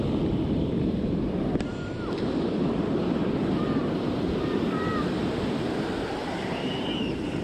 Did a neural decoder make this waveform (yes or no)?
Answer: yes